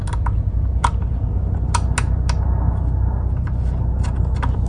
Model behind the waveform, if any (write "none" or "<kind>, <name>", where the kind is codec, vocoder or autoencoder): none